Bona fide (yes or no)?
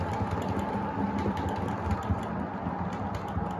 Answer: yes